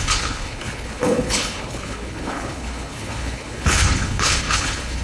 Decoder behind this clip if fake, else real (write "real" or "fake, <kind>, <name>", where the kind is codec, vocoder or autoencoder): fake, codec, HILCodec